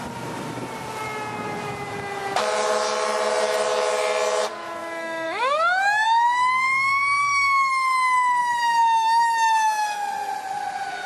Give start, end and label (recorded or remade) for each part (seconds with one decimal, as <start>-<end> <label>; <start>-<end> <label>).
0.0-4.8 recorded; 4.8-7.7 remade; 7.7-8.4 recorded; 8.4-10.1 remade; 10.1-11.1 recorded